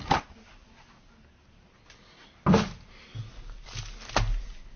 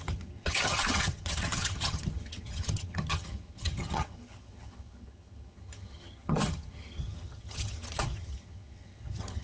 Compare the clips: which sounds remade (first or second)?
second